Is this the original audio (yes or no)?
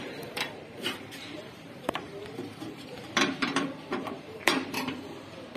no